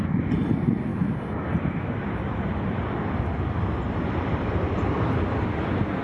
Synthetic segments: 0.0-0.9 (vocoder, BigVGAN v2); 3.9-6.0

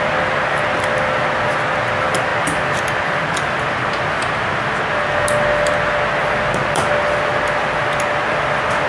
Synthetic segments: 2.3-3.6 (vocoder, BigVGAN v2); 6.2-6.8

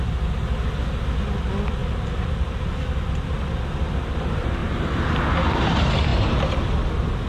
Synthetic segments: 1.8-2.7 (vocoder, BigVGAN v2); 4.6-5.2

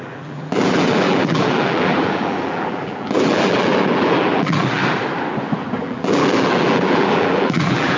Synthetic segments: 0.0-4.8 (vocoder, BigVGAN v2); 5.8-8.0

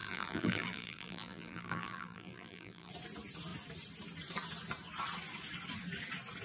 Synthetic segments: 0.0-2.9 (vocoder, BigVGAN v2)

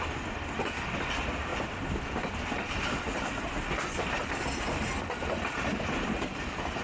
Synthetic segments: 0.0-6.8 (vocoder, BigVGAN v2)

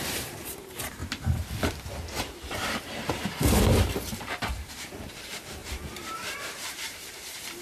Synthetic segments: 0.0-1.0 (vocoder, BigVGAN v2); 2.2-7.6